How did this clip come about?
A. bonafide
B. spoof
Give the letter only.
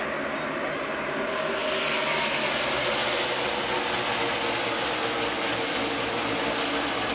A